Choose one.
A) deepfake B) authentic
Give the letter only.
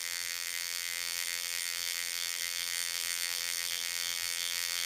A